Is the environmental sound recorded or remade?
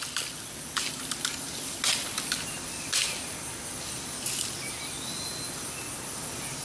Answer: recorded